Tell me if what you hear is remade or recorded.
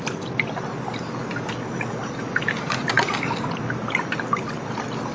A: recorded